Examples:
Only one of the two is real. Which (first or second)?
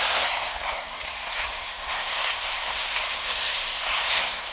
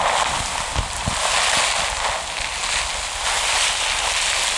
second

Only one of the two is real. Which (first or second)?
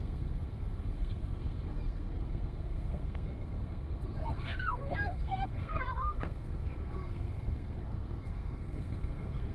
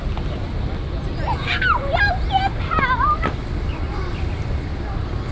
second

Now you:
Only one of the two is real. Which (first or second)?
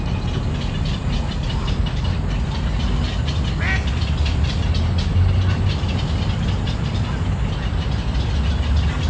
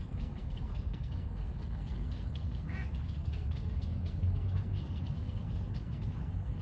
first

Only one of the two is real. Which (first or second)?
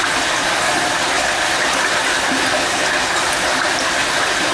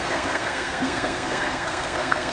first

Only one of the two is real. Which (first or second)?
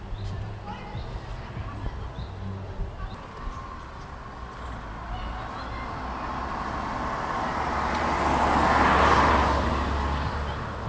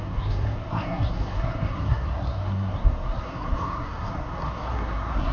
first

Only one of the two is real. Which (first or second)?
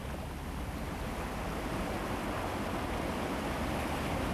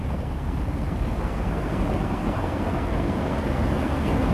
first